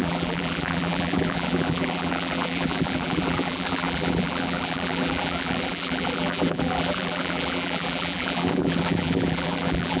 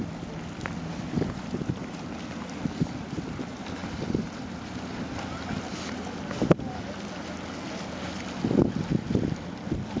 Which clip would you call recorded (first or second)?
second